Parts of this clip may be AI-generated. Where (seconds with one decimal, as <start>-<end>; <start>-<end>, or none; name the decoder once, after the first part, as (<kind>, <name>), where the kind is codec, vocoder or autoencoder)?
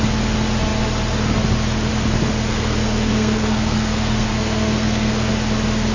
2.5-5.3 (codec, SNAC)